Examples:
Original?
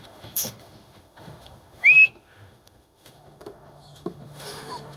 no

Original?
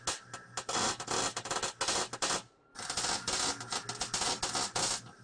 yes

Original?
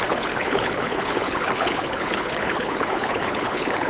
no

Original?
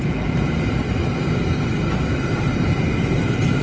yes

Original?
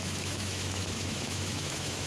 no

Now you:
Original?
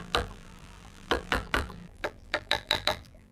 no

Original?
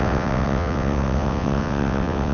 no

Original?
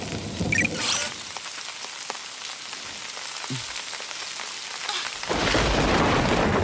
yes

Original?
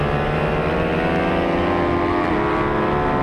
yes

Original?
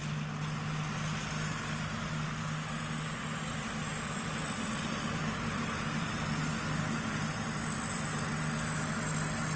yes